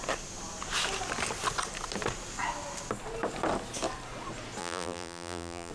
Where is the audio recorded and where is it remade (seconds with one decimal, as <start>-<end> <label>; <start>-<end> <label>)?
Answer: 0.0-4.6 recorded; 4.6-5.7 remade